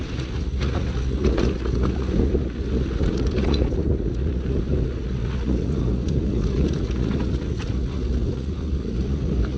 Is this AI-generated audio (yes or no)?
yes